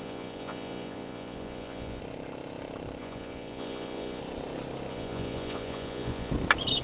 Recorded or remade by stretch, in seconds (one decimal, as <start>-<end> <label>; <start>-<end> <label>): 0.0-2.0 remade; 2.0-3.0 recorded; 3.0-4.2 remade; 4.2-4.9 recorded; 4.9-6.3 remade; 6.3-6.8 recorded